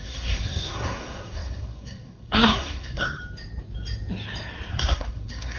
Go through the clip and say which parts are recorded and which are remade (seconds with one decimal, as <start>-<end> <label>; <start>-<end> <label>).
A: 0.0-3.2 remade; 3.2-4.7 recorded; 4.7-5.6 remade